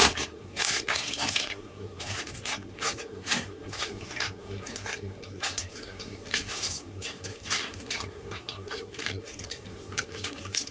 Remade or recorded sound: remade